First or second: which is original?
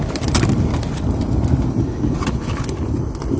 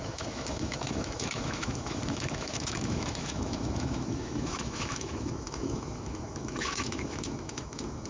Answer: first